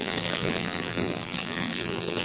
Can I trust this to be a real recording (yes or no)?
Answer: no